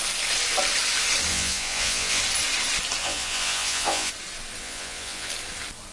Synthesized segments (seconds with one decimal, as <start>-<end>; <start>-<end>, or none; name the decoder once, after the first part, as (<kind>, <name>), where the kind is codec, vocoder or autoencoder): 1.3-2.2 (vocoder, Vocos); 3.0-4.1; 4.6-5.3

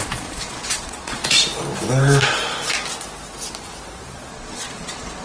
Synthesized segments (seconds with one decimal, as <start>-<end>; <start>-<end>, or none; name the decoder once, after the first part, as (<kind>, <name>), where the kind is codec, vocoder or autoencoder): 0.0-1.2 (vocoder, Vocos); 4.3-5.2

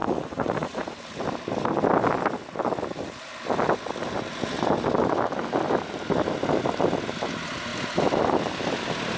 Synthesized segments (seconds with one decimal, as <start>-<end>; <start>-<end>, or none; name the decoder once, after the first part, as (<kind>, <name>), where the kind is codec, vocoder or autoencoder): 0.0-1.0 (vocoder, Vocos)

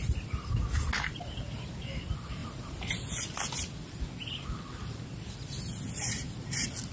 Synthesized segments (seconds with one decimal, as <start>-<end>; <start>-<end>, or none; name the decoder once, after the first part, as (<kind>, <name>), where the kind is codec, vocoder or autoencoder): none